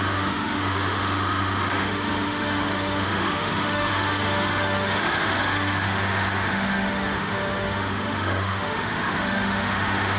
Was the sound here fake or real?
fake